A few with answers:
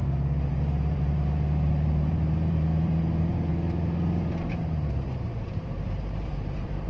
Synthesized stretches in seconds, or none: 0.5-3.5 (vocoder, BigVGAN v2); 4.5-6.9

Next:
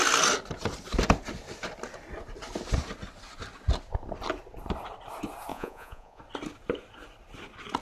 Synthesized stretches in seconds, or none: 5.5-6.2 (vocoder, Vocos)

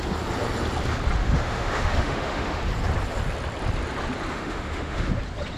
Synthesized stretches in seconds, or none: 1.2-2.6 (autoencoder, DAC-VAE); 4.3-5.1

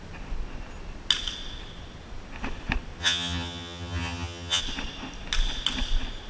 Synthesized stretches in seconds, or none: 3.0-4.6 (vocoder, HiFi-GAN)

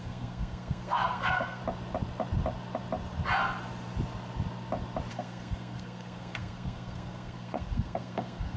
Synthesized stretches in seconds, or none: 0.0-1.6 (codec, SNAC); 5.1-8.6

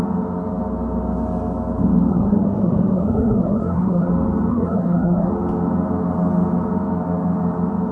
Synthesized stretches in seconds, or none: 2.1-4.1 (codec, SNAC); 4.5-5.3

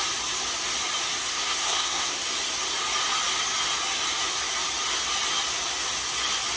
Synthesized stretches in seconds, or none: 1.3-2.2 (codec, SNAC)